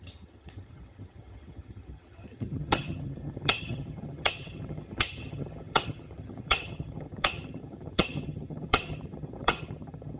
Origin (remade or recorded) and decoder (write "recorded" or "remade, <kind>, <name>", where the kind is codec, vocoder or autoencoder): remade, vocoder, HiFi-GAN